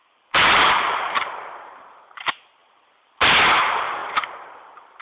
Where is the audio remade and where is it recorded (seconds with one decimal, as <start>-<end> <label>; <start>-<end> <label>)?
0.0-2.0 remade; 2.0-2.6 recorded; 2.6-3.3 remade; 3.3-5.0 recorded

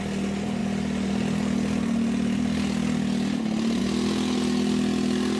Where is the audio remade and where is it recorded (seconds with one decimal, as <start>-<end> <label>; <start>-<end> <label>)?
0.0-5.4 recorded

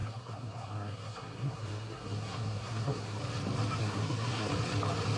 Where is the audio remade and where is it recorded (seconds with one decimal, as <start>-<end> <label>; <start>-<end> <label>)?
0.0-3.2 remade; 3.2-3.8 recorded; 3.8-4.5 remade; 4.5-5.2 recorded

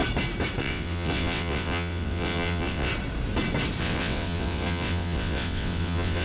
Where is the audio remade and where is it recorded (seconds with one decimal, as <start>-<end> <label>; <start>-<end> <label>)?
0.0-0.6 recorded; 0.6-2.9 remade; 2.9-3.8 recorded; 3.8-6.2 remade

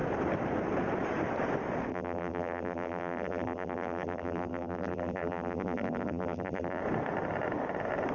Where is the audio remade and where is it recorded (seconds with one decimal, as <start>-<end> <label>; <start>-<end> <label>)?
0.0-1.9 recorded; 1.9-6.8 remade; 6.8-8.1 recorded

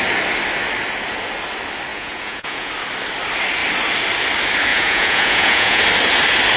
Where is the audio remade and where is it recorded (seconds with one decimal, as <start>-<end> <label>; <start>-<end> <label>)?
0.0-1.9 recorded; 1.9-2.7 remade; 2.7-4.7 recorded; 4.7-5.8 remade; 5.8-6.6 recorded

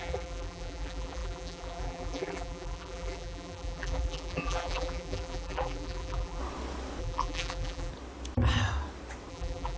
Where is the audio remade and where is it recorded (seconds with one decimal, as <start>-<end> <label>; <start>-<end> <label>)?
0.0-6.4 remade; 6.4-7.0 recorded; 7.0-7.9 remade; 7.9-9.3 recorded; 9.3-9.8 remade

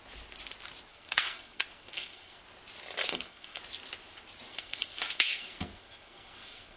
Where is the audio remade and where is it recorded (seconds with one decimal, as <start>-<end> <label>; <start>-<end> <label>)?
0.0-0.9 recorded; 0.9-2.4 remade; 2.4-3.0 recorded; 3.0-3.6 remade; 3.6-4.5 recorded; 4.5-6.8 remade